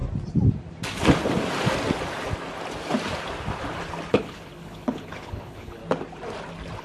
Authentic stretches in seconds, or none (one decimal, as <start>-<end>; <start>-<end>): 0.0-4.1; 5.8-6.8